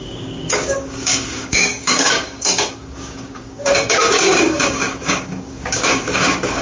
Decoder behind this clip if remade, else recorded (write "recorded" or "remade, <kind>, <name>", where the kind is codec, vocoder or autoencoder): remade, codec, DAC